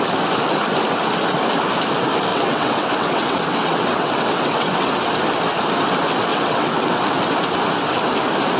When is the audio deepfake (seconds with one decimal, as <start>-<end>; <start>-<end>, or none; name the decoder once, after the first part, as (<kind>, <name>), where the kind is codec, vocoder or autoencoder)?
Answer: 2.3-4.9 (vocoder, WaveNeXt); 6.3-7.0